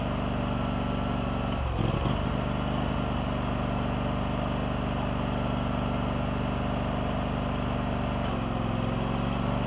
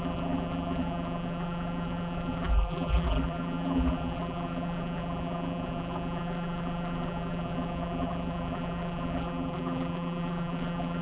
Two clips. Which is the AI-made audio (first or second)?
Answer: second